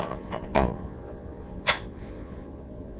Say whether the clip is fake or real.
fake